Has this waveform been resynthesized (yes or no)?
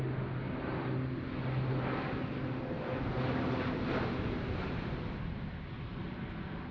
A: no